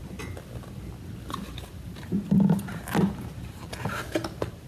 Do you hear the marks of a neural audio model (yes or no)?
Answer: no